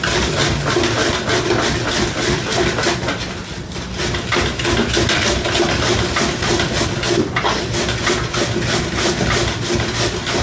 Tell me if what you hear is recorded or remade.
recorded